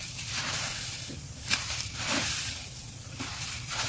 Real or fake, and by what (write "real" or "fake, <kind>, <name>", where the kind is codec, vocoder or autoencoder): fake, vocoder, BigVGAN v2